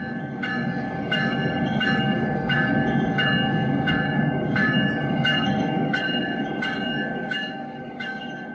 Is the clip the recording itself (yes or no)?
no